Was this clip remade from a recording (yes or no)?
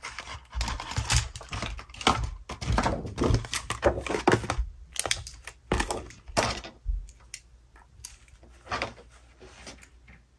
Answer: no